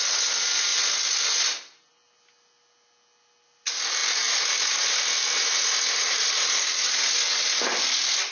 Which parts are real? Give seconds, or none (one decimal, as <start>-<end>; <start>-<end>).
0.0-8.3